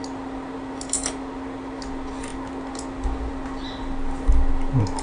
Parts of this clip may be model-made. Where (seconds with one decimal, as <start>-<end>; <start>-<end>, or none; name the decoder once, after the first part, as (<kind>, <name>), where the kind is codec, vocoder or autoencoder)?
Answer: none